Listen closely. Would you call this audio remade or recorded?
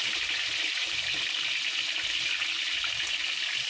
remade